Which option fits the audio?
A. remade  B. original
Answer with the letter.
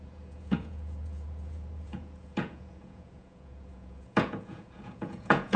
A